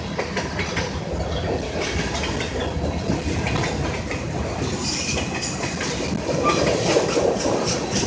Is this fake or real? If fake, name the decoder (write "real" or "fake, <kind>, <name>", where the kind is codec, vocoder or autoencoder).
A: real